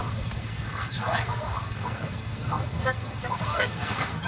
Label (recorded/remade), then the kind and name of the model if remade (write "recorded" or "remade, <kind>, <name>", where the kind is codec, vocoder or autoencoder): remade, codec, SNAC